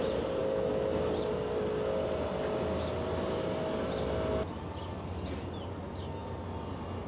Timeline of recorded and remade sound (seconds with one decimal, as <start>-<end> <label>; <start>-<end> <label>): 0.0-7.1 recorded